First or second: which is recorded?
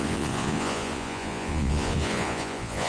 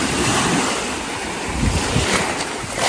second